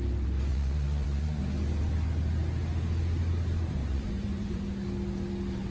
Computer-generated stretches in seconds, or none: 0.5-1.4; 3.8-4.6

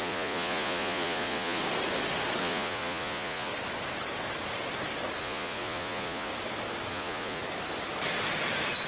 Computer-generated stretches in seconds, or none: 0.0-1.6; 2.4-3.5; 5.2-6.3; 6.9-7.4

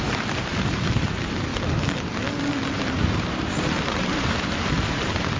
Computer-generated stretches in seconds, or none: 0.0-1.5; 2.7-5.4